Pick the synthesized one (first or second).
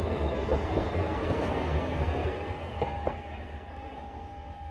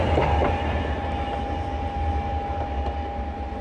first